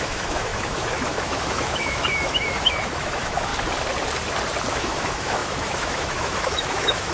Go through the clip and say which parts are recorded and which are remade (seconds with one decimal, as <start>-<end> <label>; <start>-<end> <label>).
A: 0.0-3.5 remade; 3.5-4.7 recorded; 4.7-7.1 remade